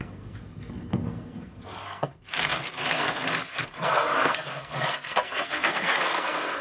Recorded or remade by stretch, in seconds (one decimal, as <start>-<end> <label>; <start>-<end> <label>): 0.0-6.6 remade